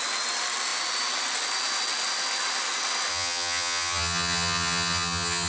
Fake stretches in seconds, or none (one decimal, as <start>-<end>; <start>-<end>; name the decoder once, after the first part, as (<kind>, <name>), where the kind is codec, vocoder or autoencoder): 3.1-5.5 (vocoder, HiFi-GAN)